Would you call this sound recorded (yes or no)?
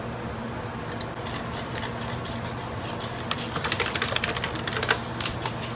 yes